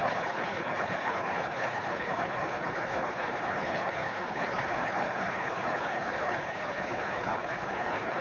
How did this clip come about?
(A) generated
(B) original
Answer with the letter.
A